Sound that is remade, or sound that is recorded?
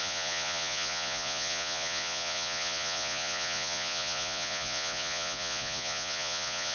remade